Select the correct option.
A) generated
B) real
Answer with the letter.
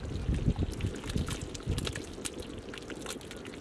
B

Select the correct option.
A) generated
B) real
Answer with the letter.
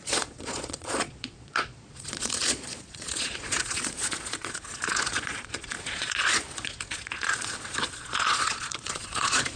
A